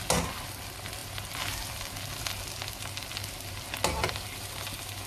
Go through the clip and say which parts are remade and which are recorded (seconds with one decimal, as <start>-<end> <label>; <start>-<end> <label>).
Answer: 0.0-5.1 recorded